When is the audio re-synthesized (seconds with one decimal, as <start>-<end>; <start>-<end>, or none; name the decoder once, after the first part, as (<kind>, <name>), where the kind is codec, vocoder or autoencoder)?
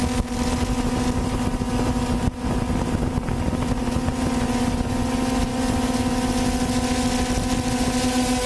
none